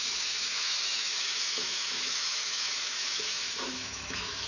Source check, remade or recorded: remade